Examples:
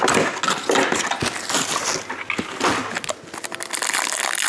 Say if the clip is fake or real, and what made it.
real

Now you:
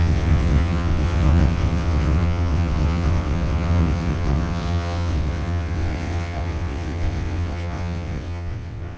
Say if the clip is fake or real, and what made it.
fake, vocoder, WaveNeXt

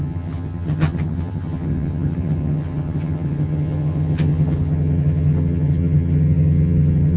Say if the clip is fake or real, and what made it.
fake, vocoder, HiFi-GAN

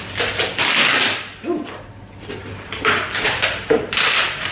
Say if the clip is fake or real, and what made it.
fake, vocoder, BigVGAN v2